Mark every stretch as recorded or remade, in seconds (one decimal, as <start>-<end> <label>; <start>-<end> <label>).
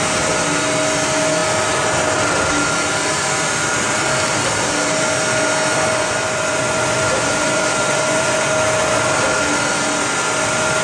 0.0-5.7 recorded; 5.7-8.5 remade; 8.5-10.8 recorded